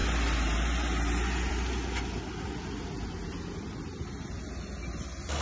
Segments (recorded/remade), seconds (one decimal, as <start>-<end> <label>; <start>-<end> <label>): 0.0-5.4 recorded